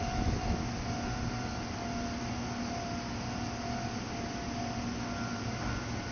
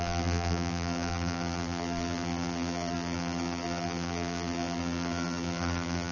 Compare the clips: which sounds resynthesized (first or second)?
second